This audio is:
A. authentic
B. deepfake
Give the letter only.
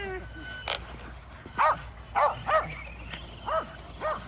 A